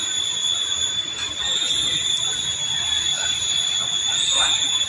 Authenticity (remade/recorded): recorded